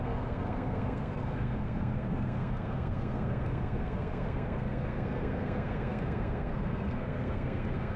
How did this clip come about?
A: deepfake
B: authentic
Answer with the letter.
A